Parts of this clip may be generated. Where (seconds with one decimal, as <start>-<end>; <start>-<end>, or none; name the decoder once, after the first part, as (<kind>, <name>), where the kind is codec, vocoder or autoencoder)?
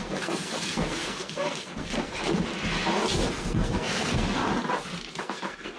0.0-2.5 (codec, SNAC); 3.3-4.4; 5.1-5.8